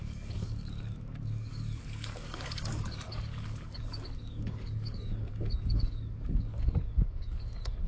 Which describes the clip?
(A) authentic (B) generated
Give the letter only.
B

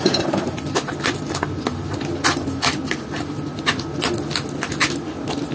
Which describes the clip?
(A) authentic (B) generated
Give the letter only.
A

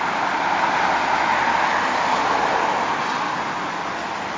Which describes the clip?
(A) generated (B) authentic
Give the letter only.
B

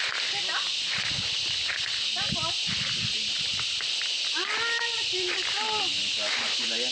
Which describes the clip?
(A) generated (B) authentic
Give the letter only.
B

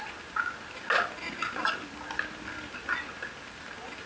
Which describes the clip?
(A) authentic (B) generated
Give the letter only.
A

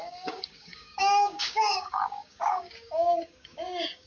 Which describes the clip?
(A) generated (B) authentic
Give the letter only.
A